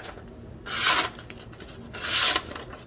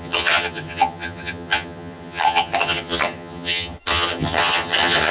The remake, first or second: second